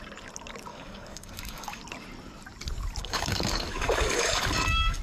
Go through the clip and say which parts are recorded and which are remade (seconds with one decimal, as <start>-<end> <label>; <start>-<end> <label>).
0.0-0.7 recorded; 0.7-1.8 remade; 1.8-3.0 recorded; 3.0-5.0 remade